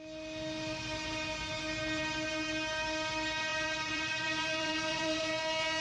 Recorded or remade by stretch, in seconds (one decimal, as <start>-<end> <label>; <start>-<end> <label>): 0.0-3.5 recorded; 3.5-5.2 remade; 5.2-5.8 recorded